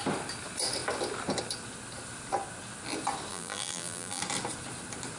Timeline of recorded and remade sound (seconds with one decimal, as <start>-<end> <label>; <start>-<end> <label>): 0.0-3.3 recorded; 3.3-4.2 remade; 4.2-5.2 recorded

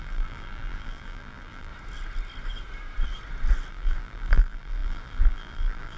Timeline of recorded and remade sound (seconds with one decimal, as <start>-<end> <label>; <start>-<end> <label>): 0.0-1.7 remade; 1.7-3.7 recorded; 3.7-6.0 remade

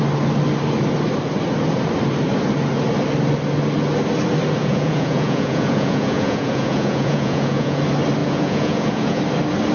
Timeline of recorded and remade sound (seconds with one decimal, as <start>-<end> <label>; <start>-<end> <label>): 0.0-4.6 recorded; 4.6-7.8 remade; 7.8-8.2 recorded; 8.2-9.2 remade; 9.2-9.7 recorded